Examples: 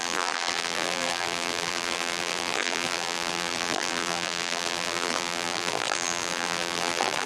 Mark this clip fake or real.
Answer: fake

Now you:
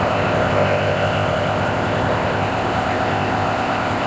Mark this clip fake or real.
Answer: fake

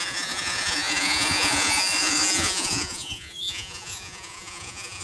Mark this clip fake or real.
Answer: fake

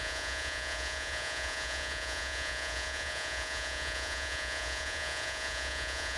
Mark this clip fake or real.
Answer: fake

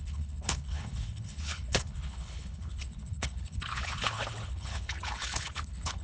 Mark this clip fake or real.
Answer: fake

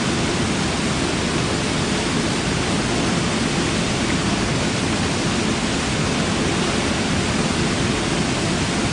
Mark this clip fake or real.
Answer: real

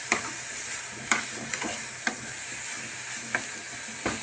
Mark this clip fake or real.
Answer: real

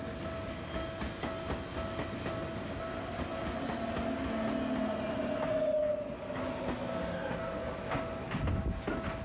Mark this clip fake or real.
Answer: real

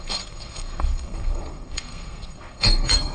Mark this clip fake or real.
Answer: fake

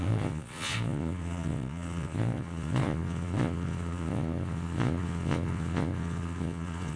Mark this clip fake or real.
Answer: fake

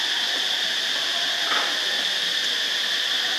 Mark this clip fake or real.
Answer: real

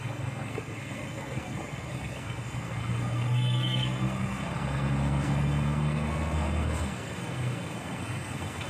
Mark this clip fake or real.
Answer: fake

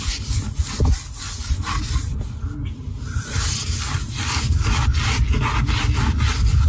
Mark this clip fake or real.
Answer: real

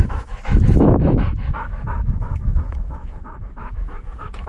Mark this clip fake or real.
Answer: fake